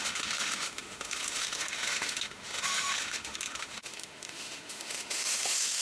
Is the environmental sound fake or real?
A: fake